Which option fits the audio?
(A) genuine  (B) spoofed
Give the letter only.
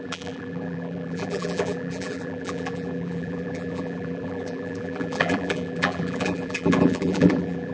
B